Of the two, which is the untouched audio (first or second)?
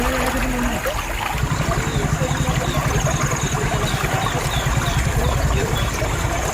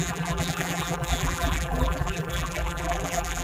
first